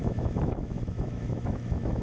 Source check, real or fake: fake